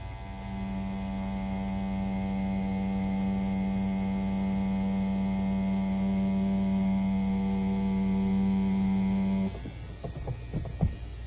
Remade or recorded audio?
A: recorded